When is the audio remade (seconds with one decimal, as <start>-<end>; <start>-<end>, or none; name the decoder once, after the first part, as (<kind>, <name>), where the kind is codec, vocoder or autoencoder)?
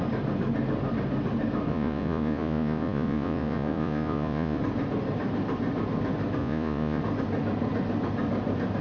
1.7-4.6 (vocoder, Vocos); 6.4-7.0